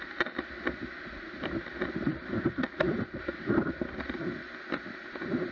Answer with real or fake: real